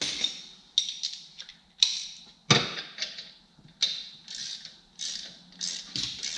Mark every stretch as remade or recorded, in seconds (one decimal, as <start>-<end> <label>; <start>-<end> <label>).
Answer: 0.0-6.4 recorded